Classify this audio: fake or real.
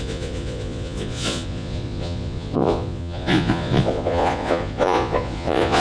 fake